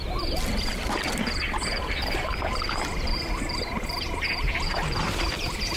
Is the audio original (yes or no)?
yes